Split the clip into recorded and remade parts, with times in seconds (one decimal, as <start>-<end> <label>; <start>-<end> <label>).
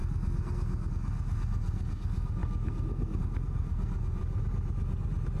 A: 0.0-4.2 remade; 4.2-5.4 recorded